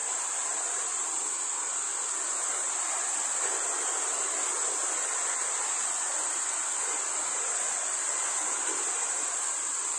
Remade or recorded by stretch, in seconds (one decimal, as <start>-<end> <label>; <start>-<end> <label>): 0.0-10.0 recorded